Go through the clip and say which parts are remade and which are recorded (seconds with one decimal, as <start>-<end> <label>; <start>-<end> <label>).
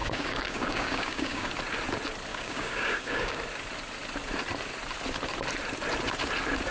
0.0-1.5 remade; 1.5-2.3 recorded; 2.3-3.4 remade; 3.4-6.7 recorded